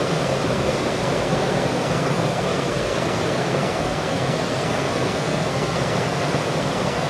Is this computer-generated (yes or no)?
yes